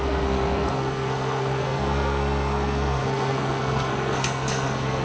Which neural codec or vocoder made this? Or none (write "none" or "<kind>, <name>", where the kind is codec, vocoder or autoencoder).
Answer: codec, SNAC